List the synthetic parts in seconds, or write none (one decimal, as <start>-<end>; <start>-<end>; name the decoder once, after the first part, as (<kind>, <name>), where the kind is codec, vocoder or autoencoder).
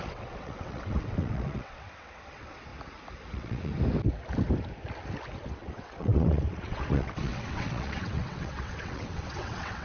0.0-2.7 (vocoder, WaveNeXt); 3.3-3.7; 5.4-9.8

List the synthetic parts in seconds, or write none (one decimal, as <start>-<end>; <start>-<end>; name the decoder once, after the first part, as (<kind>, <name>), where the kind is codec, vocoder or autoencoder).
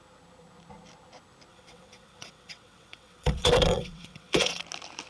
1.5-4.6 (vocoder, WaveNeXt)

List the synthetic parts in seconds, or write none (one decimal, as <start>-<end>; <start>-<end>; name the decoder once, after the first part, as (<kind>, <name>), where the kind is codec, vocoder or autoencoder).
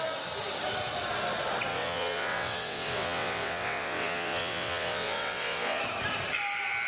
1.7-5.8 (vocoder, WaveNeXt)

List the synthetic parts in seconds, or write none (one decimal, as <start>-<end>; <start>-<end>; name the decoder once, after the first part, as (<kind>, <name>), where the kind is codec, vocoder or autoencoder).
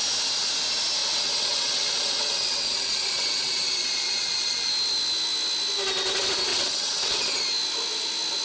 1.0-4.7 (vocoder, WaveNeXt); 6.5-7.4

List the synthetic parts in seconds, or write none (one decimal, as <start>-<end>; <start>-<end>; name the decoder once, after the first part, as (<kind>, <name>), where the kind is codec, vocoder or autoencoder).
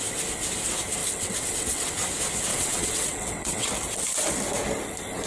1.0-1.9 (vocoder, WaveNeXt); 2.5-3.7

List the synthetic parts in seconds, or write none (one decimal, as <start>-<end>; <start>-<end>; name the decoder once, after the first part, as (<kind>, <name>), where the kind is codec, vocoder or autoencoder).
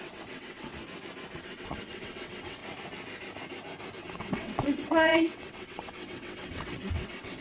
0.0-0.7 (vocoder, WaveNeXt); 1.4-2.6; 4.0-7.4